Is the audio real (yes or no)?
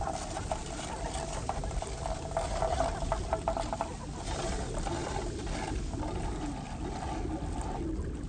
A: yes